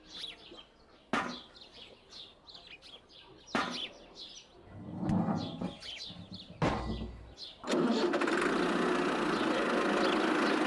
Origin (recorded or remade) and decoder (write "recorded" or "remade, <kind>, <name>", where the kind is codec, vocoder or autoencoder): recorded